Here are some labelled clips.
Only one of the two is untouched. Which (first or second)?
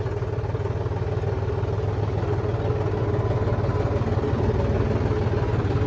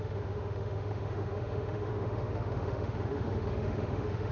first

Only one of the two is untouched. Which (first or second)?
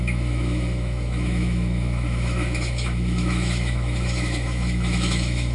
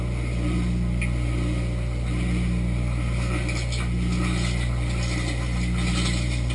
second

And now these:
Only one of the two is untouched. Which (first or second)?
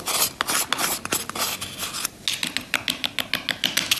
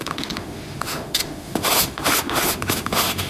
first